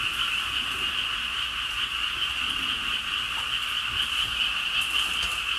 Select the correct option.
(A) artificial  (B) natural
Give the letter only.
B